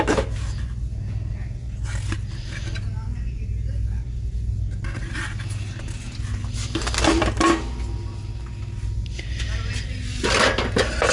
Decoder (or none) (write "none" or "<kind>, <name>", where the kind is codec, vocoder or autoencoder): none